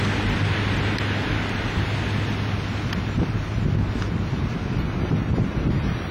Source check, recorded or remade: recorded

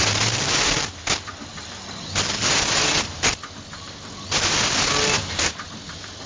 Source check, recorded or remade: recorded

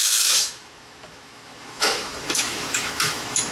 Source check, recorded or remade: remade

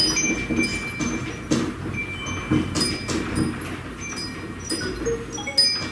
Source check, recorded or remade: recorded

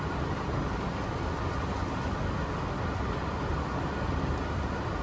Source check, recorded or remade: recorded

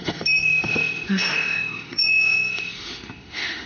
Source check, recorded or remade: remade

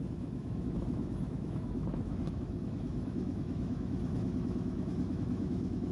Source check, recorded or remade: remade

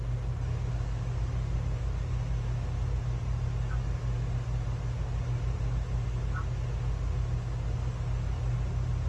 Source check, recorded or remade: recorded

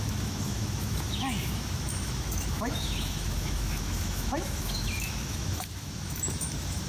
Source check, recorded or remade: remade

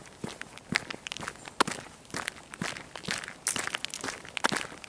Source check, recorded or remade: recorded